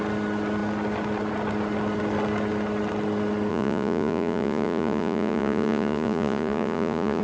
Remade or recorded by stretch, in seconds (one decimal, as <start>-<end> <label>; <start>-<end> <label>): 0.0-3.5 recorded; 3.5-7.2 remade